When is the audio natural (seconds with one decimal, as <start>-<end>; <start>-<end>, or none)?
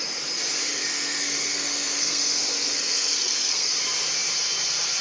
0.0-0.7; 3.7-5.0